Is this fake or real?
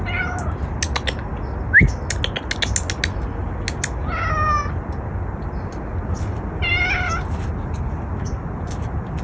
real